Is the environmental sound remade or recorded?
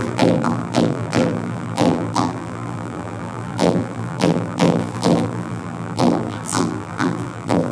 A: remade